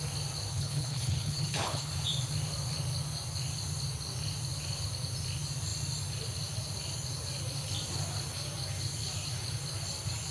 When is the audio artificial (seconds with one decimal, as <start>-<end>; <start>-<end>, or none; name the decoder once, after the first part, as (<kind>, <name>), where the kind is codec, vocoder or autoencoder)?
0.5-1.9 (codec, HILCodec)

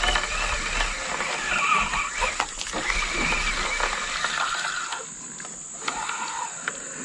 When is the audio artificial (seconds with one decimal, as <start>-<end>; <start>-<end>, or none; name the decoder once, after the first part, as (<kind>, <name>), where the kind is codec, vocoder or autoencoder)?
none

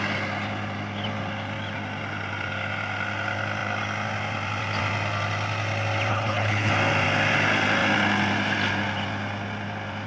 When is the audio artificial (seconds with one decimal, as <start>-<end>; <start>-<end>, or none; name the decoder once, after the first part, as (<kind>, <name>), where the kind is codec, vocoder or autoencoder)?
6.1-6.7 (codec, HILCodec)

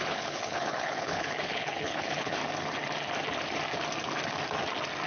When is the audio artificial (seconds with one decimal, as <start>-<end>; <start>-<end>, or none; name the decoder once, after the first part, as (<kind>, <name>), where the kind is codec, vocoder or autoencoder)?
0.0-2.4 (codec, HILCodec)

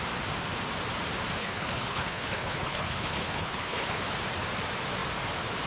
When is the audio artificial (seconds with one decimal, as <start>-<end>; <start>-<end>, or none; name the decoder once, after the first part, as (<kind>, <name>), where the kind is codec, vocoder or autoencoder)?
1.4-4.0 (codec, HILCodec)

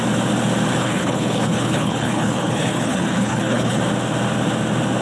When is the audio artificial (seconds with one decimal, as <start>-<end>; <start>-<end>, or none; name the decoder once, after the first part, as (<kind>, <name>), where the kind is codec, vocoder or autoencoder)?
0.8-3.8 (codec, HILCodec)